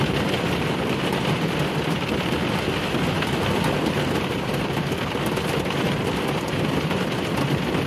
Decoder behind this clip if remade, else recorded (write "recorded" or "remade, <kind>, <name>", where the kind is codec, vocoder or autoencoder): remade, vocoder, BigVGAN v2